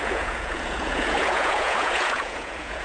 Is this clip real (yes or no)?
no